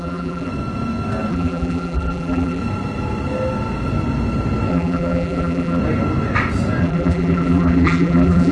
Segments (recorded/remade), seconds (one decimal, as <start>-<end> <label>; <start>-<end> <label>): 0.0-0.5 remade; 0.5-1.3 recorded; 1.3-2.6 remade; 2.6-4.7 recorded; 4.7-5.8 remade; 5.8-6.8 recorded; 6.8-8.5 remade